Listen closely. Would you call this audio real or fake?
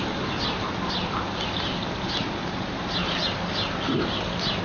real